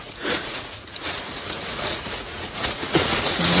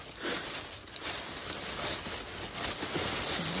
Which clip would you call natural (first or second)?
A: second